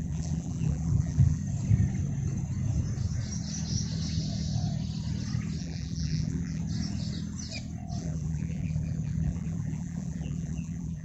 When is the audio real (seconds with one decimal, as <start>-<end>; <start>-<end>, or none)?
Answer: 1.4-5.6; 6.6-8.0